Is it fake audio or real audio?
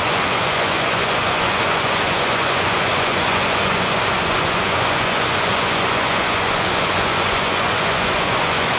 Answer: fake